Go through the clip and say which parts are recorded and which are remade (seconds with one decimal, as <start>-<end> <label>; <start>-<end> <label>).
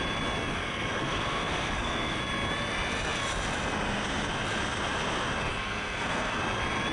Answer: 0.0-0.5 recorded; 0.5-2.2 remade; 2.2-5.5 recorded; 5.5-6.4 remade; 6.4-6.9 recorded